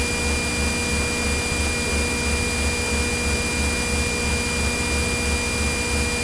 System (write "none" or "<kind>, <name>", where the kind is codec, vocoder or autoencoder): none